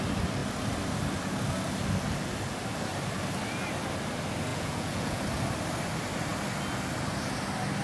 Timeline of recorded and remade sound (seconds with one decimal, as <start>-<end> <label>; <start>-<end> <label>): 0.0-4.5 recorded; 4.5-5.2 remade; 5.2-7.8 recorded